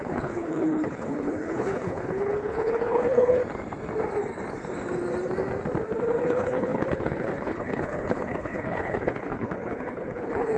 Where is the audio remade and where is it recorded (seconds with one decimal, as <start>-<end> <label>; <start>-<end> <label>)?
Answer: 0.0-3.4 remade; 3.4-6.2 recorded; 6.2-10.6 remade